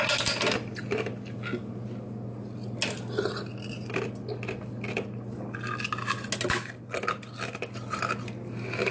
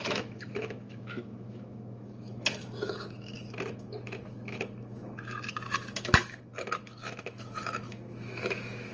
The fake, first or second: second